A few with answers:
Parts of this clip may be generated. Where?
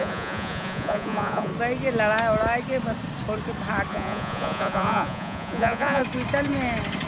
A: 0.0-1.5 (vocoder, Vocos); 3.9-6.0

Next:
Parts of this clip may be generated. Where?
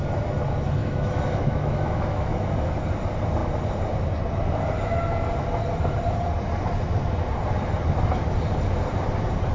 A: 0.8-2.5 (autoencoder, DAC-VAE)